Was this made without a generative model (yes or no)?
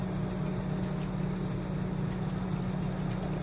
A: yes